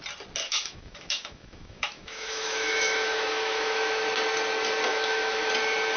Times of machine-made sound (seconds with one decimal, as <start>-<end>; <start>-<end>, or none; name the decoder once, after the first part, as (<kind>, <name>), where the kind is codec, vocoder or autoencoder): 0.4-4.0 (autoencoder, DAC-VAE); 4.9-5.5